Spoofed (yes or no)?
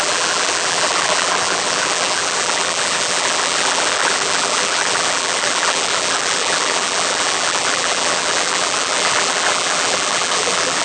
yes